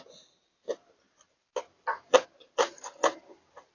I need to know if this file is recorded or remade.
recorded